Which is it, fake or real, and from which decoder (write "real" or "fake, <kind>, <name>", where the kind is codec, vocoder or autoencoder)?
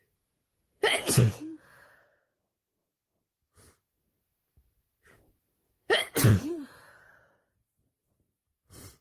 fake, vocoder, Vocos